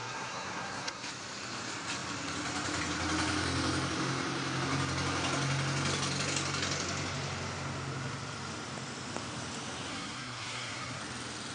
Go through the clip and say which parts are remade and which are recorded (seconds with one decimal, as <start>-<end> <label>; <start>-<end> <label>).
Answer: 0.0-1.1 remade; 1.1-9.9 recorded; 9.9-11.0 remade; 11.0-11.5 recorded